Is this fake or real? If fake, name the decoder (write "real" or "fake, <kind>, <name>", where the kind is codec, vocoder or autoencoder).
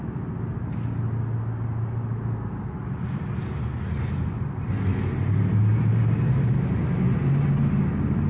real